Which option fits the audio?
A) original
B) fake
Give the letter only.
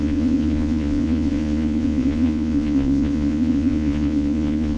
B